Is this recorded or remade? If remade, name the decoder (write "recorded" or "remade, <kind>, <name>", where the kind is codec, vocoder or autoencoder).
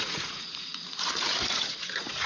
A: remade, vocoder, Vocos